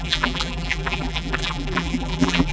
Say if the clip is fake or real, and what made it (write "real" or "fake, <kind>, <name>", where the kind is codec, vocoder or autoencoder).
fake, vocoder, BigVGAN v2